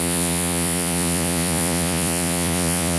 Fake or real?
fake